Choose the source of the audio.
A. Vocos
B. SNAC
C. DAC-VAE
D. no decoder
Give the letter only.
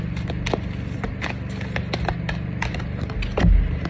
D